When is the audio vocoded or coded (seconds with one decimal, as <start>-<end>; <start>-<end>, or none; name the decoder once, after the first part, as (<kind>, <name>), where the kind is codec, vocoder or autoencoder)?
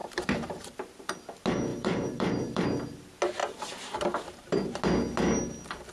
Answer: 0.0-1.1 (vocoder, BigVGAN v2); 1.7-2.6; 3.4-4.8